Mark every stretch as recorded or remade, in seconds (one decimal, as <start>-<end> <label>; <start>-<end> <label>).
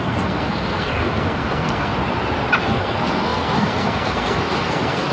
0.0-1.9 remade; 1.9-2.6 recorded; 2.6-5.1 remade